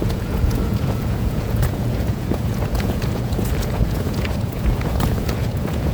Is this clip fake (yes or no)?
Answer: yes